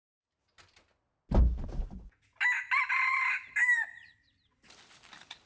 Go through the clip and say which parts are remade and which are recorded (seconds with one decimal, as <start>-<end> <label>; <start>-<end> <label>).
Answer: 0.0-5.5 recorded